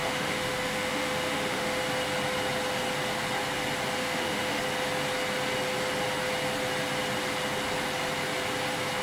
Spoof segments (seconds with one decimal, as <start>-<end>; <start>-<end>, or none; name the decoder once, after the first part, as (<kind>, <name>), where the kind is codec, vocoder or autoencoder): 0.0-1.8 (autoencoder, DAC-VAE); 4.0-4.6